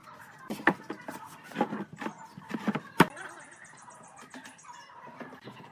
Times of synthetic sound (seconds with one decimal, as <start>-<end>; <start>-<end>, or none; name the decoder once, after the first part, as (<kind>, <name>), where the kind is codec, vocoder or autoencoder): 3.4-4.1 (vocoder, BigVGAN v2)